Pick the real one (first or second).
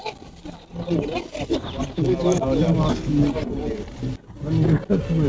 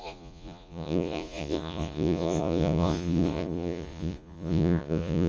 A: first